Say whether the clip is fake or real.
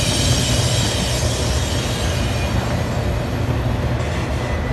real